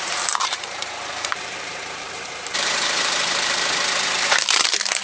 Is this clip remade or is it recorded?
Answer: remade